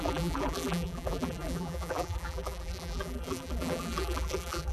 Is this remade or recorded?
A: remade